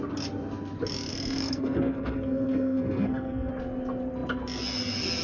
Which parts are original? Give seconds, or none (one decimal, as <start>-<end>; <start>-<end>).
0.0-1.1; 3.5-5.2